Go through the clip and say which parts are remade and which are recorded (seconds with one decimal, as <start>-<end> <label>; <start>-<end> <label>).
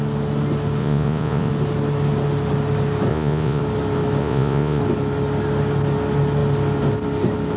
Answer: 0.0-0.8 recorded; 0.8-1.5 remade; 1.5-3.1 recorded; 3.1-3.6 remade; 3.6-4.2 recorded; 4.2-4.8 remade; 4.8-7.6 recorded